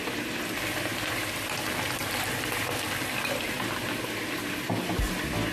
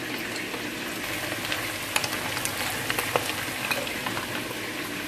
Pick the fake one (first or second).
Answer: first